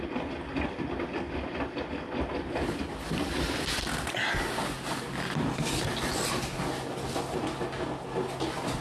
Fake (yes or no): no